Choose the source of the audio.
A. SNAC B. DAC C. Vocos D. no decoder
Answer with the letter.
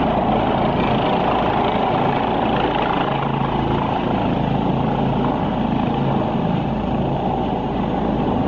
D